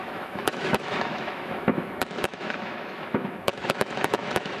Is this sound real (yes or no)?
no